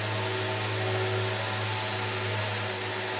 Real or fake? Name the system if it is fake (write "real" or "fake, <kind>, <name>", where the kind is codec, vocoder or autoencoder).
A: real